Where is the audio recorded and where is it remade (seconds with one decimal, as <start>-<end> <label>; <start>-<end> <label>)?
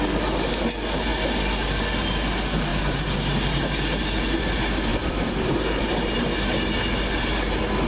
0.0-4.9 recorded; 4.9-5.5 remade; 5.5-7.9 recorded